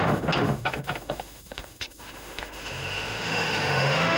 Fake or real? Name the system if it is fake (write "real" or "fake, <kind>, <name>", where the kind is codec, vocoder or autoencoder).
fake, autoencoder, DAC-VAE